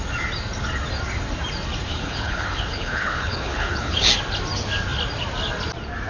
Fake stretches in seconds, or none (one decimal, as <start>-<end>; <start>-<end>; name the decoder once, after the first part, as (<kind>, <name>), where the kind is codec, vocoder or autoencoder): 1.9-4.1 (codec, HILCodec)